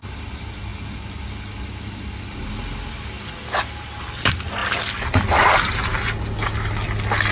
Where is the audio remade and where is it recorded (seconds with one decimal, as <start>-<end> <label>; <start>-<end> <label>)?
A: 0.0-7.3 recorded